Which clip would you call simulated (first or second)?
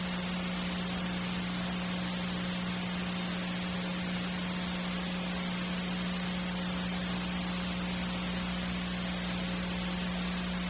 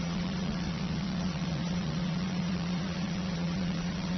second